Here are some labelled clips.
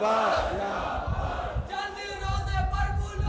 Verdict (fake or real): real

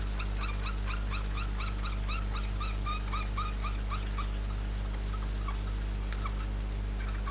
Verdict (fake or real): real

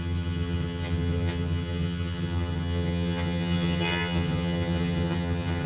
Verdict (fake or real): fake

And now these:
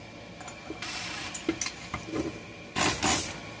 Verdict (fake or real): real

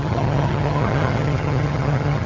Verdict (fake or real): fake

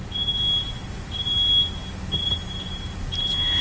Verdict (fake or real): real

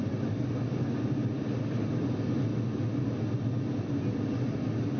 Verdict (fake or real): real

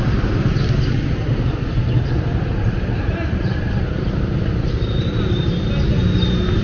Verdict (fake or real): real